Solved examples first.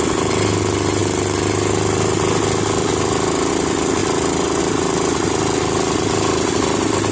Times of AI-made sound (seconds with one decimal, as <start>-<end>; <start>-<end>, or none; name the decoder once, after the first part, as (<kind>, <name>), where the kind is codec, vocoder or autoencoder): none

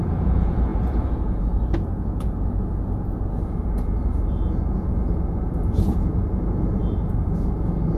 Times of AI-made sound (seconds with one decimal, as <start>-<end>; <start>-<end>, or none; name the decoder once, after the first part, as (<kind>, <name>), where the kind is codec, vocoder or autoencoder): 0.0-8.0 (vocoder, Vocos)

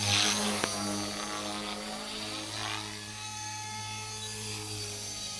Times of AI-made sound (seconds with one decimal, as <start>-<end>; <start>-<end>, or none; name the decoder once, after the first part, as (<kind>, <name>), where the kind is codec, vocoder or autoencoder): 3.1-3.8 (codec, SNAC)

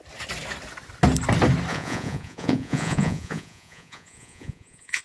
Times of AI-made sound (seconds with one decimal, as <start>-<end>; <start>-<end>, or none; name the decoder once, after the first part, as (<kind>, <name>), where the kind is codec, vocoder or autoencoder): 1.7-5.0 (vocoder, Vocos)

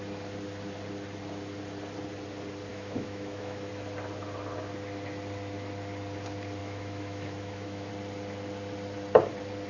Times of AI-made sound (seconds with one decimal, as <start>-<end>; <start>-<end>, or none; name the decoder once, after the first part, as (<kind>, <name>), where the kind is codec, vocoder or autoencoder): 2.7-3.7 (autoencoder, DAC-VAE); 6.6-7.9

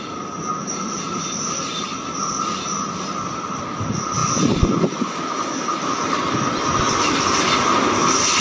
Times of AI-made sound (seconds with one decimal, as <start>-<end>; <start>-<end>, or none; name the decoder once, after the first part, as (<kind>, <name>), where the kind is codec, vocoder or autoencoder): none

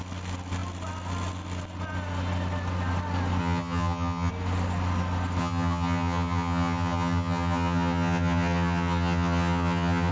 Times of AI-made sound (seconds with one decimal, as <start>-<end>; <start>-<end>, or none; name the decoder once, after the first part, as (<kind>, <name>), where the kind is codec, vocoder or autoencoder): 3.4-4.3 (vocoder, HiFi-GAN); 5.4-10.1

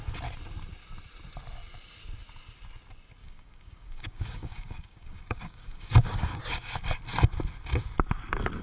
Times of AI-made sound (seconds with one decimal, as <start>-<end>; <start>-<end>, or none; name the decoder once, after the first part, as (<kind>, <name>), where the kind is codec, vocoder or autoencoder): 3.2-6.4 (codec, DAC)